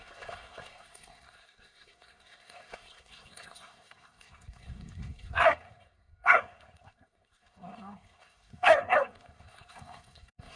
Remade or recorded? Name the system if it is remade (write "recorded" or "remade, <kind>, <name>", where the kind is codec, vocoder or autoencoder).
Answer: remade, codec, SNAC